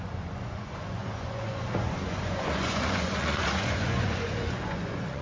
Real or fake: fake